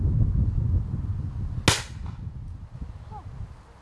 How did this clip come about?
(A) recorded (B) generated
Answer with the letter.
A